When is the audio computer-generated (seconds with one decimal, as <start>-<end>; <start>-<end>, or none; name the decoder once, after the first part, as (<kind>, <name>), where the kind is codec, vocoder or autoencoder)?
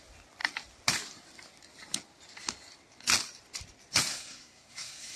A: 4.1-5.2 (codec, SNAC)